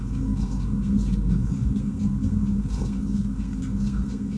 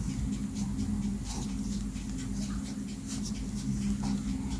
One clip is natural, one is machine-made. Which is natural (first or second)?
second